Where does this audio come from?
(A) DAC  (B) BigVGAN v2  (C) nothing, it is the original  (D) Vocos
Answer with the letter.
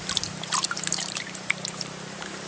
B